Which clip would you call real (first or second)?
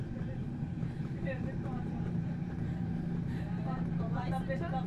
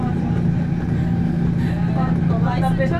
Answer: second